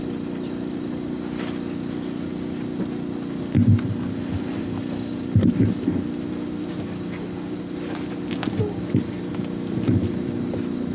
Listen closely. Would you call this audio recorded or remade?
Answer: recorded